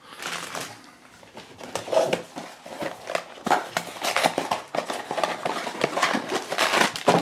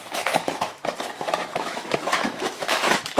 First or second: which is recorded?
first